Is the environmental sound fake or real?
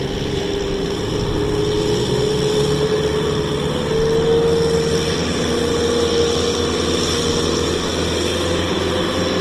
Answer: real